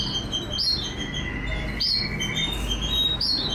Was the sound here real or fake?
real